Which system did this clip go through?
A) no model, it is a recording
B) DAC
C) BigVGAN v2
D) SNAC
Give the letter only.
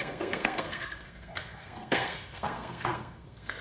D